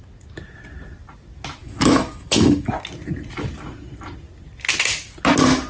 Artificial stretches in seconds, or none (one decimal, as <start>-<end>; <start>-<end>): 1.6-2.7